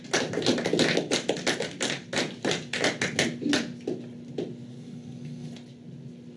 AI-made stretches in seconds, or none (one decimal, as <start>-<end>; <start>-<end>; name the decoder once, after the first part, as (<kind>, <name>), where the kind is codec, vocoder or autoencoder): 4.7-5.5 (codec, SNAC)